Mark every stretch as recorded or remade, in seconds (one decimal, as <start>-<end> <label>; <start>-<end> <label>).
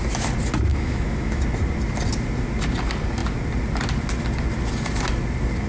0.0-0.7 recorded; 0.7-1.4 remade; 1.4-5.7 recorded